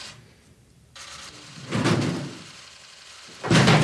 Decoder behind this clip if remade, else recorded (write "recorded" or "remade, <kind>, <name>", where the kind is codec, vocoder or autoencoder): recorded